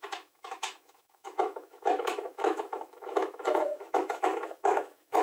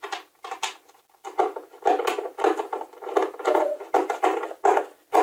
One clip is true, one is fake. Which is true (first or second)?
second